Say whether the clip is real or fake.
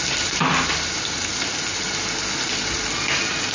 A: real